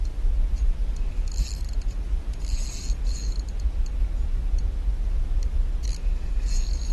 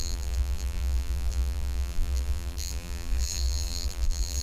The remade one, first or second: second